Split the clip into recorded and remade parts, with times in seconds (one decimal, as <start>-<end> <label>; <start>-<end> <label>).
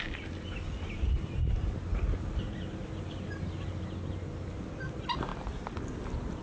0.0-6.4 recorded